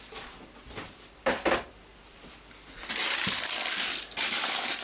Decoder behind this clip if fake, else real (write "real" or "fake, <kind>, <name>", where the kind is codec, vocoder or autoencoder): real